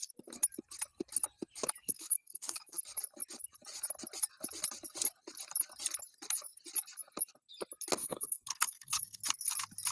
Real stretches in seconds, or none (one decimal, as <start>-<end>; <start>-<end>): 0.0-1.8; 2.8-8.0; 9.2-9.9